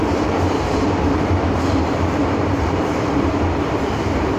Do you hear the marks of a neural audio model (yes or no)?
yes